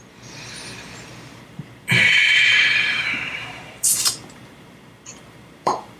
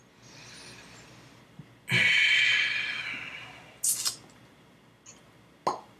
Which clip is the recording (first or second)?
second